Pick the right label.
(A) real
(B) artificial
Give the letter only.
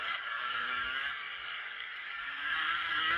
B